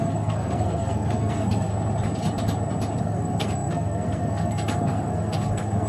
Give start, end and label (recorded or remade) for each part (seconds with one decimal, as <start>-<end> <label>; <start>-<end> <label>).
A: 0.0-1.7 remade; 1.7-3.0 recorded; 3.0-5.9 remade